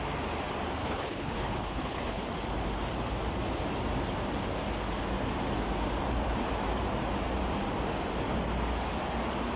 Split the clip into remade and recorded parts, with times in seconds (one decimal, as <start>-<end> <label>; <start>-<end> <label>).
0.0-0.8 recorded; 0.8-2.2 remade; 2.2-9.6 recorded